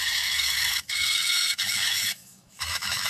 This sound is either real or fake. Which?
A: fake